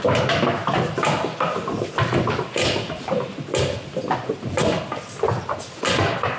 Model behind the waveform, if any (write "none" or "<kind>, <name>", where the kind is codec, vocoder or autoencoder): none